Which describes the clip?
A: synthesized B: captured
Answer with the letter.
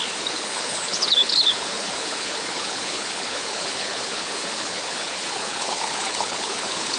A